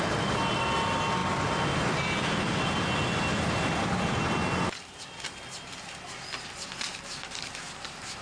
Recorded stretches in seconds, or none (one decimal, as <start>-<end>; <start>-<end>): 0.0-8.2